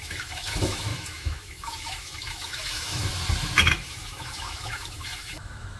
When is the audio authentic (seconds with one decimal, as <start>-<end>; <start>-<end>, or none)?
3.1-3.6